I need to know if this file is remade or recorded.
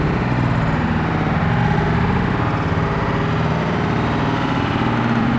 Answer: recorded